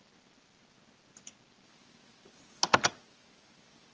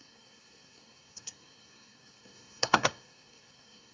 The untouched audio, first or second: first